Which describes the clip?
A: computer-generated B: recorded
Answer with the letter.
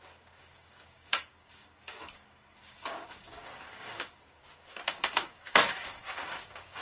A